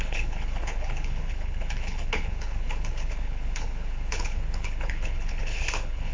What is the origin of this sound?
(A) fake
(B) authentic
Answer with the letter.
A